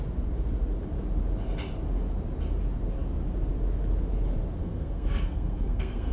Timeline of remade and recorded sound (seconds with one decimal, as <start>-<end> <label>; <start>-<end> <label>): 0.0-4.6 recorded; 4.6-6.1 remade